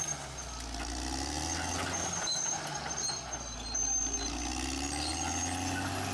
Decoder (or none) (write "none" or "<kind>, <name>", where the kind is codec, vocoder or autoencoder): none